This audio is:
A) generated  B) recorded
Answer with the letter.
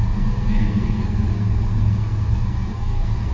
A